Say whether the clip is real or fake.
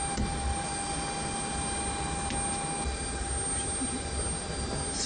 real